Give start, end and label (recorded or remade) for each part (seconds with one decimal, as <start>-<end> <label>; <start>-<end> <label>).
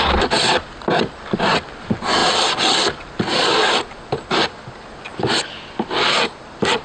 0.0-6.8 recorded